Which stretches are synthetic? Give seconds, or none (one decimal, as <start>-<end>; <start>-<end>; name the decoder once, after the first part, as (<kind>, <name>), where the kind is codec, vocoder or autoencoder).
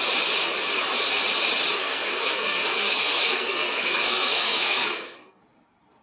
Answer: 1.8-5.4 (codec, SNAC)